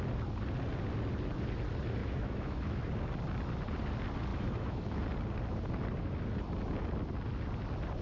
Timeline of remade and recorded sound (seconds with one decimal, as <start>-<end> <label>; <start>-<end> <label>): 0.0-2.0 recorded; 2.0-2.9 remade; 2.9-4.3 recorded; 4.3-5.0 remade; 5.0-8.0 recorded